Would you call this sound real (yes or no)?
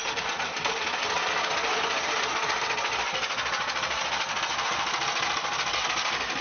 yes